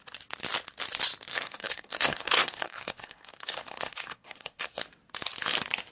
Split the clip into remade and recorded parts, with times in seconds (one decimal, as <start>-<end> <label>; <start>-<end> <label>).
0.0-1.3 recorded; 1.3-4.8 remade; 4.8-5.9 recorded